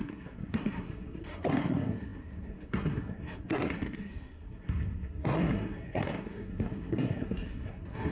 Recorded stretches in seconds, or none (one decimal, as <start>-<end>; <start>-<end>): none